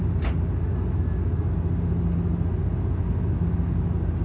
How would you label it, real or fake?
real